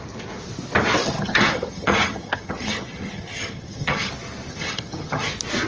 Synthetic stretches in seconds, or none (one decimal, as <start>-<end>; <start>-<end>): 1.0-4.1; 4.5-5.3